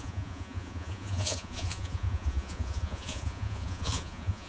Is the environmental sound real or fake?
fake